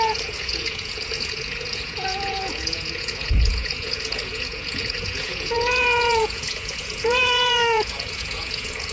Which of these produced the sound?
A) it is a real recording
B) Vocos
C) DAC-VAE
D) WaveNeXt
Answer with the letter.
B